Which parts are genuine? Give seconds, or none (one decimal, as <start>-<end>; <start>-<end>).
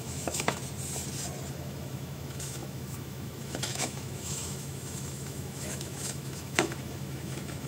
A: 0.6-1.5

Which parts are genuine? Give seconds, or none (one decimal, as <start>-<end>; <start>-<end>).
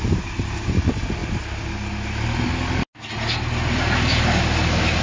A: 0.0-5.0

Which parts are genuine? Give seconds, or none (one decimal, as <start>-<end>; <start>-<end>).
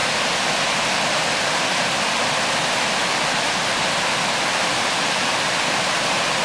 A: 0.0-6.4